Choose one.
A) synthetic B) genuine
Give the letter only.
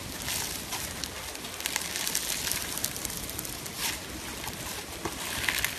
B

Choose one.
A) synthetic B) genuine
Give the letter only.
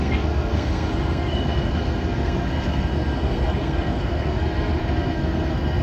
A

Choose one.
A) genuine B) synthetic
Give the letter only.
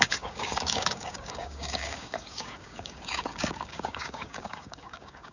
B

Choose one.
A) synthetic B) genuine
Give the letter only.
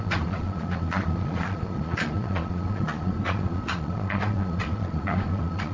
A